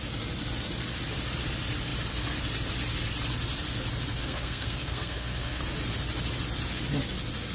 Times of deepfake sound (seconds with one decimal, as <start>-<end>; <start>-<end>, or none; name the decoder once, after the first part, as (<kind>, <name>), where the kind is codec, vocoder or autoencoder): 4.2-5.6 (codec, SNAC)